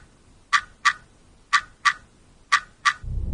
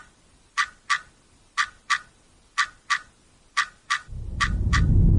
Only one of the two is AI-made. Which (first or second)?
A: second